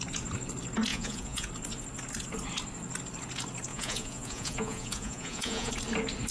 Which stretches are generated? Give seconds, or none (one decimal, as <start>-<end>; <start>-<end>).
0.9-1.5; 3.7-5.7